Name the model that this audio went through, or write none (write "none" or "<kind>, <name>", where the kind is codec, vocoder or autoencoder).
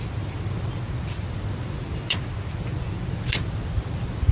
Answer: none